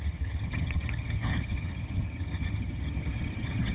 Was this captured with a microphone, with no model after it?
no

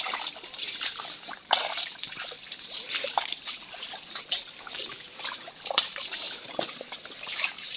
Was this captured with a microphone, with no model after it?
no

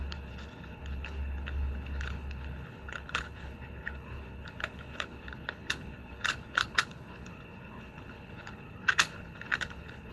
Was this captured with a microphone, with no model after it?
no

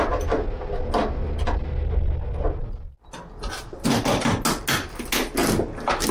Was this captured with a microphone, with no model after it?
yes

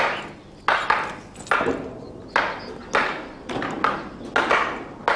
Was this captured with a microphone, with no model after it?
yes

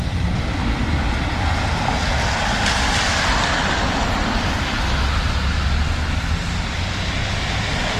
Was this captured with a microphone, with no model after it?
yes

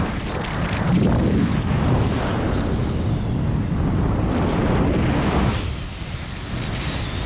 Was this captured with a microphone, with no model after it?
yes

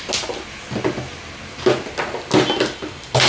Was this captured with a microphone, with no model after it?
yes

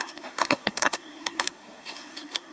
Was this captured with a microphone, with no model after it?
no